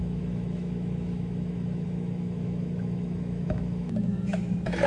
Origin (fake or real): fake